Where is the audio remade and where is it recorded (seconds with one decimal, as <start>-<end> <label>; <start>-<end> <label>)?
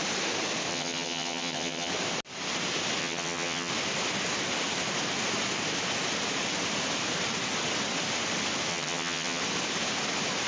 0.0-0.7 recorded; 0.7-1.9 remade; 1.9-3.0 recorded; 3.0-3.7 remade; 3.7-8.7 recorded; 8.7-9.4 remade; 9.4-10.5 recorded